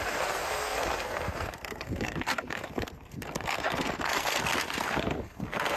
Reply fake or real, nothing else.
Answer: fake